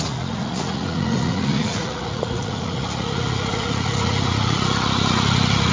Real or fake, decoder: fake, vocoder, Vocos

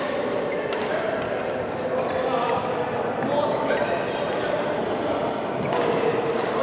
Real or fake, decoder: real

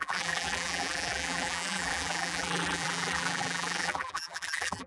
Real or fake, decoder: fake, vocoder, BigVGAN v2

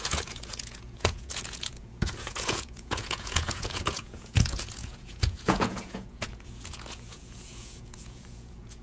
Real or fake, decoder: fake, vocoder, Vocos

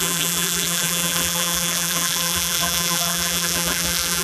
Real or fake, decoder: fake, vocoder, BigVGAN v2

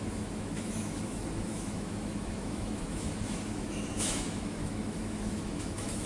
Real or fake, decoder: fake, autoencoder, DAC-VAE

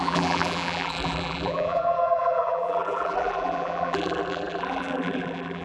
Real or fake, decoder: fake, vocoder, BigVGAN v2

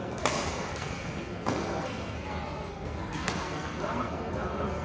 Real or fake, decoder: fake, codec, SNAC